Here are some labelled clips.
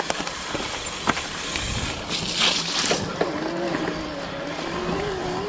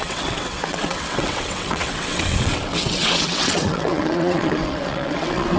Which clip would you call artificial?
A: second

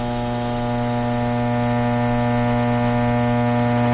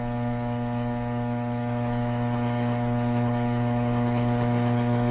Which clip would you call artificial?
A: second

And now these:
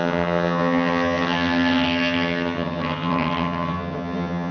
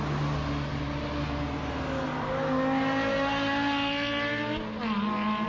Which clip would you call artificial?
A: first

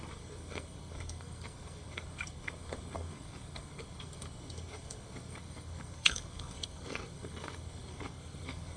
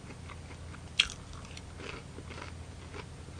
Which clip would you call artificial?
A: first